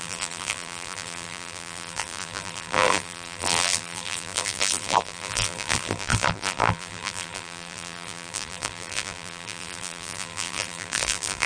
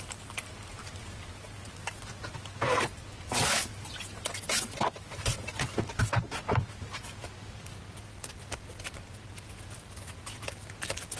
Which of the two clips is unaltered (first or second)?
second